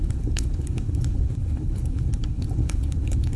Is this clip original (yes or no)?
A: no